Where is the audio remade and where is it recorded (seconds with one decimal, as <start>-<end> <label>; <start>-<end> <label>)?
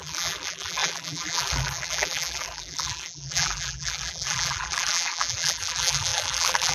0.0-6.7 remade